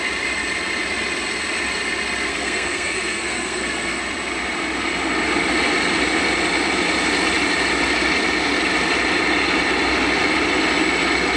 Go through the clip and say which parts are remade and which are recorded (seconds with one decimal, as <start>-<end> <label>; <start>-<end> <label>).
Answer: 0.0-2.3 recorded; 2.3-4.0 remade; 4.0-11.4 recorded